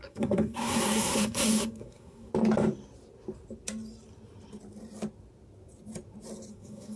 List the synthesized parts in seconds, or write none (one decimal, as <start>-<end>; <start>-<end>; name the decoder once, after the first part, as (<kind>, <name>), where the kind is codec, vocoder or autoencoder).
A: 0.0-2.3 (codec, SNAC); 6.5-7.0